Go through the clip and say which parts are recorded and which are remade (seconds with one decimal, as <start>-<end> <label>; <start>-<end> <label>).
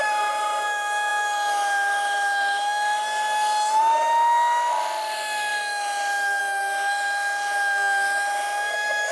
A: 0.0-9.1 remade